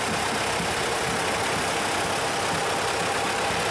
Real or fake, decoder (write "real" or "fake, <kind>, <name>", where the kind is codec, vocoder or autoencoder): real